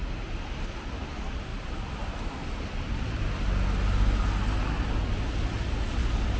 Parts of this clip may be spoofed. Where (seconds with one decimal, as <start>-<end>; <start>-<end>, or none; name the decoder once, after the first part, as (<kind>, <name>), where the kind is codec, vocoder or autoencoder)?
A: none